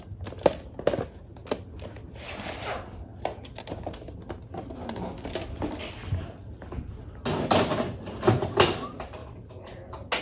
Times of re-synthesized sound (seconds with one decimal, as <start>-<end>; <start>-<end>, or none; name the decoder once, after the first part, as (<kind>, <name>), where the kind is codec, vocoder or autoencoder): none